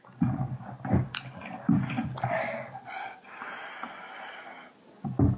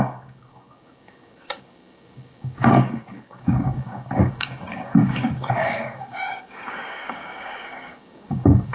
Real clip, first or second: first